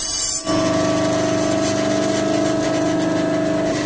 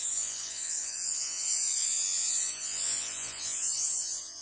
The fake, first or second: second